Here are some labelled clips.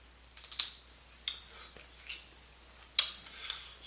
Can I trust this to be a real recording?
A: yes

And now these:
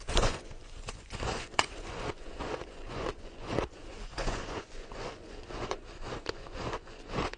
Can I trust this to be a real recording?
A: no